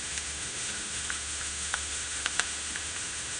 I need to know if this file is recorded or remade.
remade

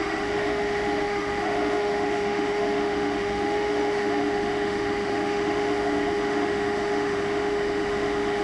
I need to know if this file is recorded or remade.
remade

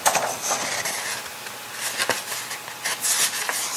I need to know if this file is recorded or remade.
recorded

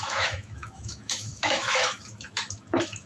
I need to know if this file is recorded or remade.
remade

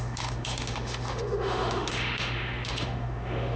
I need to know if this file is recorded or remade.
remade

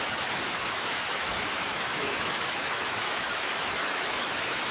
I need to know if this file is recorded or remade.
remade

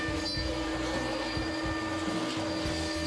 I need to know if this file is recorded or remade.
recorded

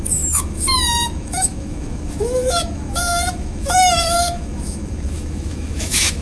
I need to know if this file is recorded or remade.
remade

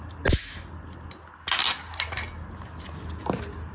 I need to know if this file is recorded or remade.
recorded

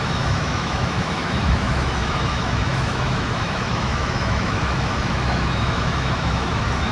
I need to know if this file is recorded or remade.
remade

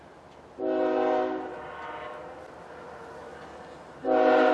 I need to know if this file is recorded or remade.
recorded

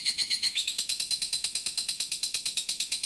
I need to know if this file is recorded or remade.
remade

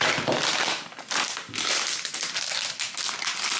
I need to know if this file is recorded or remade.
recorded